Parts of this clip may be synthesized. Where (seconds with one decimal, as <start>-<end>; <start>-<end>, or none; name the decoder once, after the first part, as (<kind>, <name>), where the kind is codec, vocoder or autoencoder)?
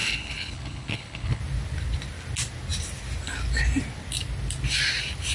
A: 0.0-1.4 (codec, HILCodec)